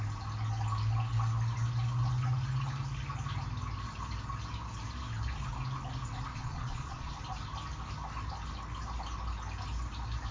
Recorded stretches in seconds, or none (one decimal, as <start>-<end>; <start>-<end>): 0.0-6.3; 7.1-10.3